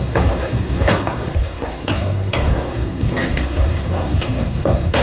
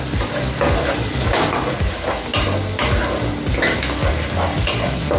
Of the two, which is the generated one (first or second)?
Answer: first